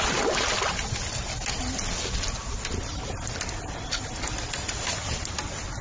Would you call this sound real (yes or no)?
yes